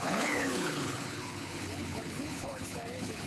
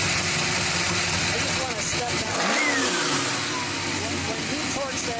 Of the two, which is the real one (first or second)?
second